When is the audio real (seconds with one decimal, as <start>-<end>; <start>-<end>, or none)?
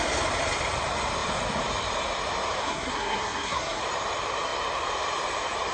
0.0-2.6; 3.8-5.7